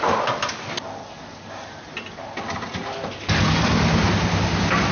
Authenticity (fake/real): real